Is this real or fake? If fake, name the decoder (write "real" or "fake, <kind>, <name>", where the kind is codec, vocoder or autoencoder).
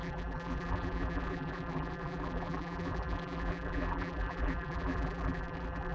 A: fake, vocoder, BigVGAN v2